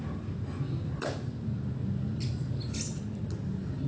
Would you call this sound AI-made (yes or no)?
no